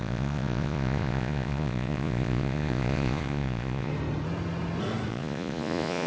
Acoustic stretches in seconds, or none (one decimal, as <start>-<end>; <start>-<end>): 3.9-5.1